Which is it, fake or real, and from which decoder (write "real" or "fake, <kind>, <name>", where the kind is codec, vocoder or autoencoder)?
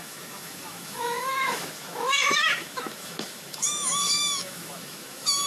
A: fake, autoencoder, DAC-VAE